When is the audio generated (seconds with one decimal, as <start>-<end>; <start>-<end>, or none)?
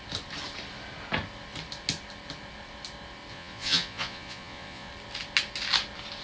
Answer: 3.3-4.9